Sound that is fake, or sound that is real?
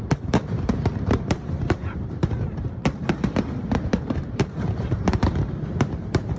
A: fake